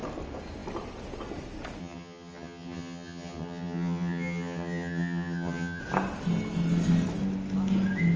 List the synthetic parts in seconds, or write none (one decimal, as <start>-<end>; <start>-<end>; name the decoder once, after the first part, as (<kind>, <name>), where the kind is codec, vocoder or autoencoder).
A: 1.8-5.8 (vocoder, HiFi-GAN)